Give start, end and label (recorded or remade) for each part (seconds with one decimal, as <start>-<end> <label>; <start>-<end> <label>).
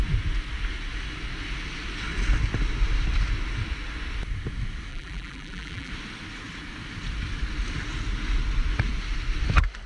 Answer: 0.0-4.9 recorded; 4.9-5.9 remade; 5.9-9.9 recorded